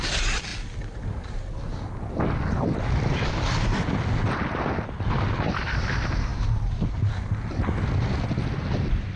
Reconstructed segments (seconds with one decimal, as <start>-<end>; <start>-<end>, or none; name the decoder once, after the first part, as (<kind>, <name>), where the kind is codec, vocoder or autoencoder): none